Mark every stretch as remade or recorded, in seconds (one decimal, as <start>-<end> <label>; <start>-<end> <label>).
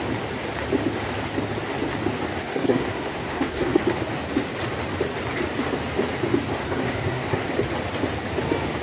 0.0-2.4 recorded; 2.4-3.8 remade; 3.8-6.6 recorded; 6.6-7.5 remade; 7.5-8.8 recorded